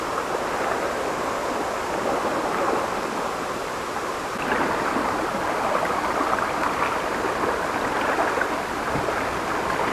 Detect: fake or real real